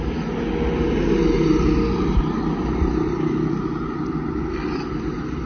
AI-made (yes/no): no